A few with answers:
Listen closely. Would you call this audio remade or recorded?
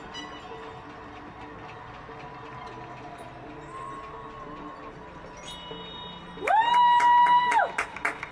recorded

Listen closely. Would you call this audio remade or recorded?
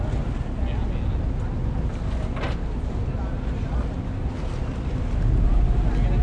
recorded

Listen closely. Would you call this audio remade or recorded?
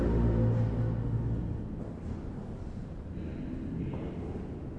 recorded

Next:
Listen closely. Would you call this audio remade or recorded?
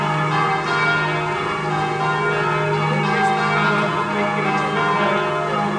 recorded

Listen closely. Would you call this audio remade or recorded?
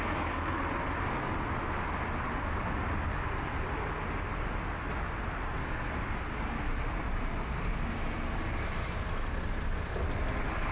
recorded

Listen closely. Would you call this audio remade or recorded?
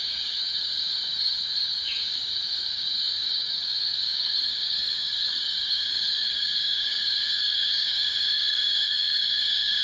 remade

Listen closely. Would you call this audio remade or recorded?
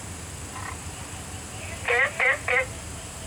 recorded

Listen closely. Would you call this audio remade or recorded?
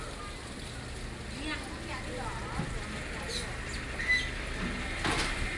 recorded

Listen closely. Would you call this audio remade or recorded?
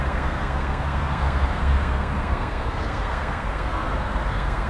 remade